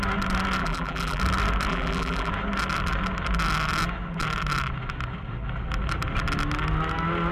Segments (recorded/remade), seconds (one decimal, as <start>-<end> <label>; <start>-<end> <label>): 0.0-0.6 recorded; 0.6-1.2 remade; 1.2-1.7 recorded; 1.7-2.3 remade; 2.3-7.3 recorded